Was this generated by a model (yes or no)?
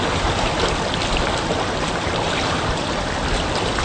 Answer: no